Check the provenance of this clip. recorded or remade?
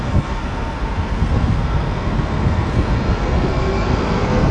remade